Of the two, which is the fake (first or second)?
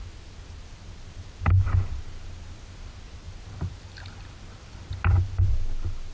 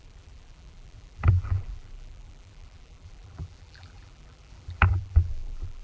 second